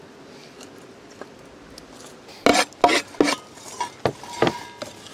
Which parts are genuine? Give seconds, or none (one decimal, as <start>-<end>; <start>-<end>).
0.0-5.1